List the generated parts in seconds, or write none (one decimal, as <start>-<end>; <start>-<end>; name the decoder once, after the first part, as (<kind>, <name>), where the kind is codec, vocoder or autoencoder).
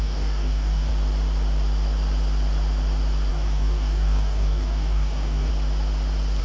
0.0-0.9 (codec, DAC); 3.3-5.5